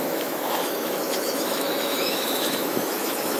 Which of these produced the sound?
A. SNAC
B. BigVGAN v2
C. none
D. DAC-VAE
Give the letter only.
D